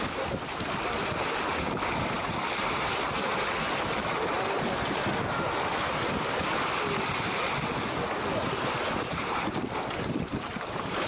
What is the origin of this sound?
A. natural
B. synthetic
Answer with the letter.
A